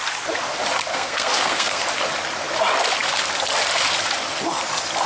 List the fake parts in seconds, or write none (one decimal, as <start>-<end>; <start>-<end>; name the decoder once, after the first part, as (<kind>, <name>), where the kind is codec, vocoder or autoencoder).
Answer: 0.9-1.8 (codec, SNAC)